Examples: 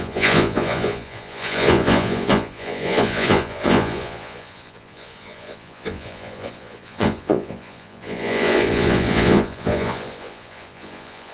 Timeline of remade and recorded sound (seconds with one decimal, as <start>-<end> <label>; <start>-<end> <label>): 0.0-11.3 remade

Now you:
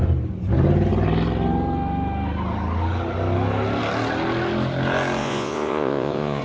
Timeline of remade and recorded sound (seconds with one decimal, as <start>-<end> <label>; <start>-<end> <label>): 0.0-5.2 recorded; 5.2-6.4 remade

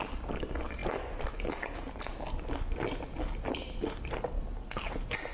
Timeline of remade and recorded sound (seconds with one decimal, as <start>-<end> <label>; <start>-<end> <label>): 0.0-5.3 recorded

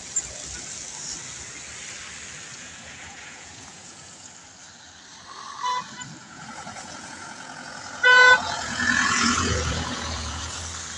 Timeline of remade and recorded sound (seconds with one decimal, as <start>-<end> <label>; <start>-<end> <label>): 0.0-2.5 recorded; 2.5-4.3 remade; 4.3-6.2 recorded; 6.2-10.6 remade; 10.6-11.0 recorded

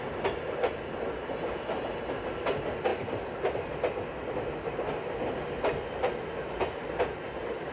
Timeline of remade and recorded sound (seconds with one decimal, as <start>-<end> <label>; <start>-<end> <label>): 0.0-7.7 recorded

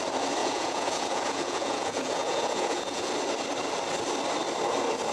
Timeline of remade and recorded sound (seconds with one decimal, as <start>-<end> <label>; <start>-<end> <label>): 0.0-0.4 recorded; 0.4-3.1 remade; 3.1-5.1 recorded